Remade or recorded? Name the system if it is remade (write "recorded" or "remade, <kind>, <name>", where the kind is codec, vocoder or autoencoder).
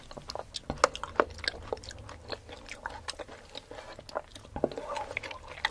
recorded